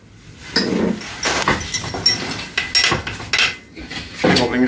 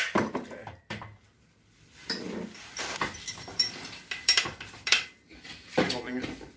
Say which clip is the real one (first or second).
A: first